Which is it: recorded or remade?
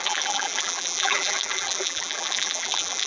remade